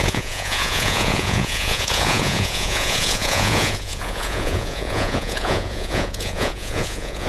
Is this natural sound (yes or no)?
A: no